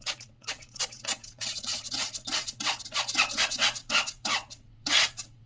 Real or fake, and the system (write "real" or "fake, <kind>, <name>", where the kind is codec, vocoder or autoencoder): fake, vocoder, WaveNeXt